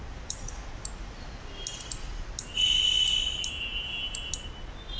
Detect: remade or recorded recorded